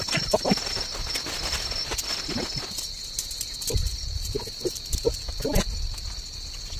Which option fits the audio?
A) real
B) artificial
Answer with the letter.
A